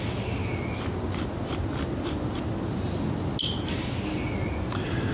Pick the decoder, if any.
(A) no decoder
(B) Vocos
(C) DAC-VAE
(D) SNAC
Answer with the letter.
A